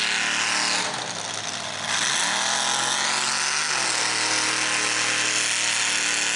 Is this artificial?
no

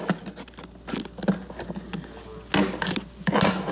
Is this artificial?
no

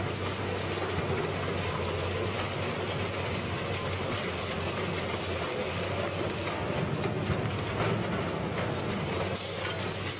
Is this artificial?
no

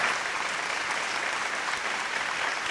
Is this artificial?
no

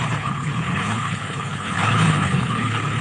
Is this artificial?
yes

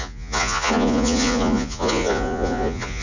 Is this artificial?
yes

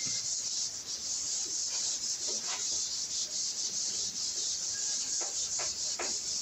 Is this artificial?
no